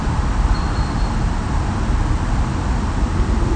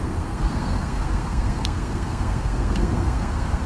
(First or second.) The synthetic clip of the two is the second